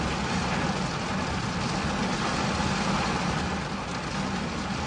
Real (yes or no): yes